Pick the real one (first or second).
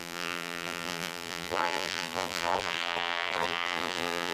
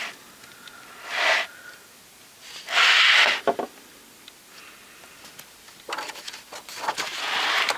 second